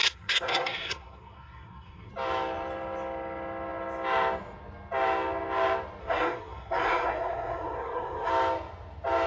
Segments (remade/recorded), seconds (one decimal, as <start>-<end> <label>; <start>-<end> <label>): 0.0-2.1 remade; 2.1-6.0 recorded; 6.0-8.3 remade; 8.3-9.3 recorded